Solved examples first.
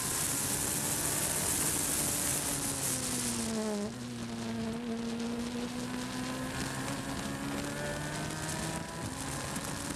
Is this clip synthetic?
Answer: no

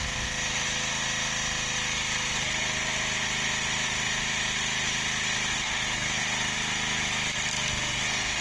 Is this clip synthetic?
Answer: no